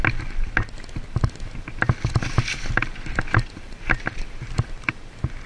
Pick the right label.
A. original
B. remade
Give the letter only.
A